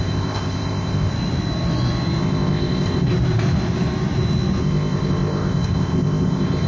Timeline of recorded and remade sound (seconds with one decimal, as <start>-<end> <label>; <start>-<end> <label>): 0.0-1.1 remade; 1.1-2.2 recorded; 2.2-3.1 remade; 3.1-4.6 recorded; 4.6-6.7 remade